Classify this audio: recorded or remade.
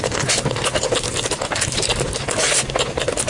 recorded